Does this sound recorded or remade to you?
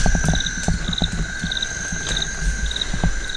recorded